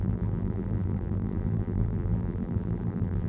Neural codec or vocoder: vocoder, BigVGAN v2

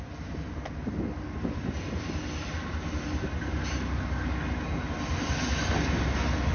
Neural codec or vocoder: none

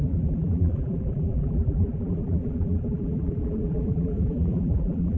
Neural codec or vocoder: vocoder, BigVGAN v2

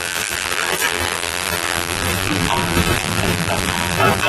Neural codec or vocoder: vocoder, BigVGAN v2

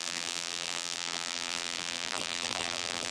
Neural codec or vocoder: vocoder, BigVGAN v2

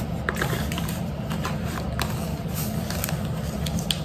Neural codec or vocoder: none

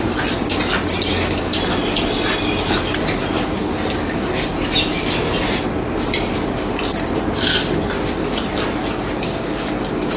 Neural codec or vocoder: none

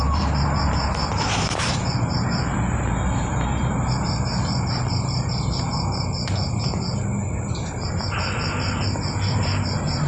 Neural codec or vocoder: vocoder, BigVGAN v2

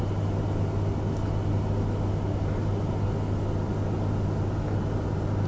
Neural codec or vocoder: none